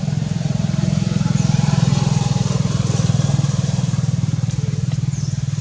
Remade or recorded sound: remade